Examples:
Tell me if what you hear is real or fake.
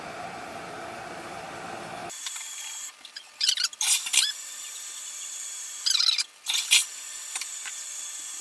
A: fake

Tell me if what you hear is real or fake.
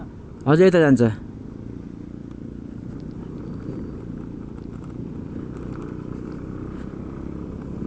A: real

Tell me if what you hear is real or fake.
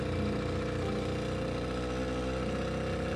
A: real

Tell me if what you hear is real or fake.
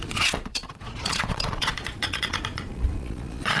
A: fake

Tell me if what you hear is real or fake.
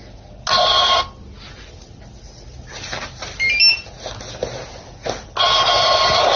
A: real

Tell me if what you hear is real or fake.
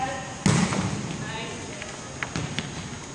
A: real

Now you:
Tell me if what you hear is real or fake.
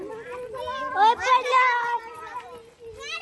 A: real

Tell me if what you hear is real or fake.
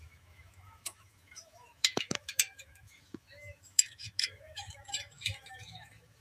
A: fake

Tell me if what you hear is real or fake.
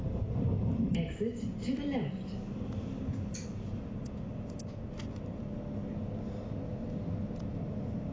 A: real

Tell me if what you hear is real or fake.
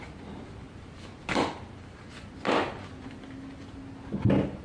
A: real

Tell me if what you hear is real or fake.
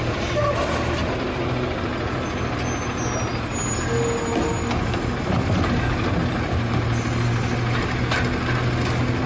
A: real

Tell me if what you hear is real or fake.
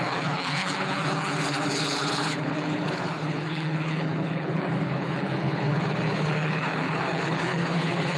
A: fake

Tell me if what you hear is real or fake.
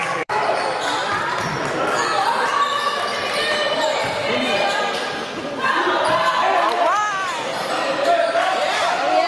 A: fake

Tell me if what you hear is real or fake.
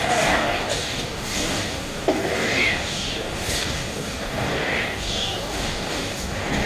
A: fake